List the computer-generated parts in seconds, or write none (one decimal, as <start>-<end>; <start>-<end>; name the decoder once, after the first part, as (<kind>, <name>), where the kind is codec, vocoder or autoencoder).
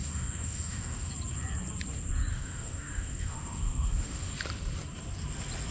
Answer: 0.0-1.1 (autoencoder, DAC-VAE); 2.3-4.3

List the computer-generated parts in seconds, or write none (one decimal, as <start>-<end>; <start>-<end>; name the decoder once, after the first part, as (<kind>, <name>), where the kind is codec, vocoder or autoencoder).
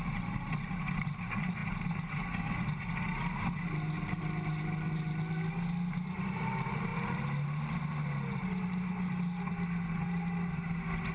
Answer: none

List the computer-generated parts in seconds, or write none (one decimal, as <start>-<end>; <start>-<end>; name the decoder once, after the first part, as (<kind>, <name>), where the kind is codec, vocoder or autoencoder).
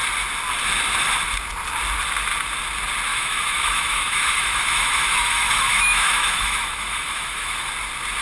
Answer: 3.1-7.7 (autoencoder, DAC-VAE)